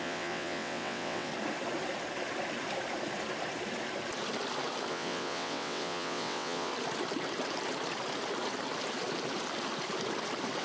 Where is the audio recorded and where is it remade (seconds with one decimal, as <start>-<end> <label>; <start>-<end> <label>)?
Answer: 0.0-1.3 remade; 1.3-4.9 recorded; 4.9-6.7 remade; 6.7-10.6 recorded

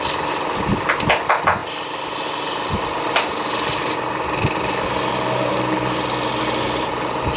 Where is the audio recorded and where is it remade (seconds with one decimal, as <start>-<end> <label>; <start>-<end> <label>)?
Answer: 0.0-7.4 recorded

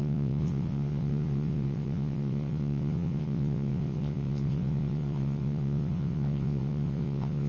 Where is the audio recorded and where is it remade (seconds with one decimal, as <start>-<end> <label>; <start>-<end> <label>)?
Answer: 0.0-7.5 remade

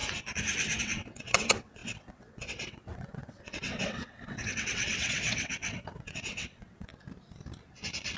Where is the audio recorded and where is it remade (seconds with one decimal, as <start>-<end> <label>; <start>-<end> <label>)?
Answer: 0.0-0.8 recorded; 0.8-6.9 remade; 6.9-8.2 recorded

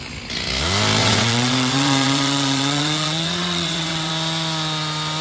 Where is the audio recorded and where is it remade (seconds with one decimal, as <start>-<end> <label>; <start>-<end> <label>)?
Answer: 0.0-1.0 recorded; 1.0-4.1 remade; 4.1-5.2 recorded